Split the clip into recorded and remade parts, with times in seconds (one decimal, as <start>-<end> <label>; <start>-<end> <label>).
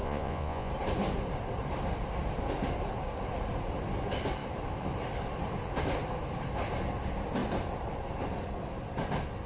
0.0-0.7 remade; 0.7-9.5 recorded